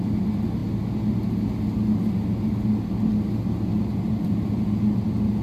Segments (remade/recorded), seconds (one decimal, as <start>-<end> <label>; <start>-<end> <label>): 0.0-0.6 remade; 0.6-3.8 recorded; 3.8-5.4 remade